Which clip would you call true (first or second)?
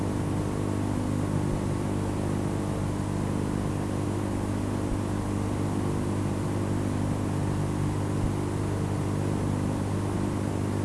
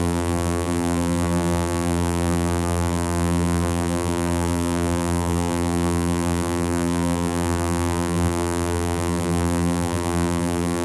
first